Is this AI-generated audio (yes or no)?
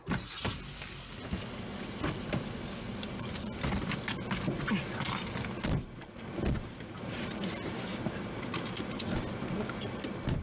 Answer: no